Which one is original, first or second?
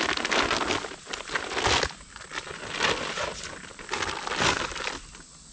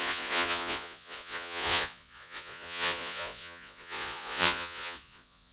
first